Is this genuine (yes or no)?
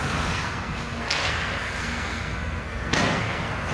no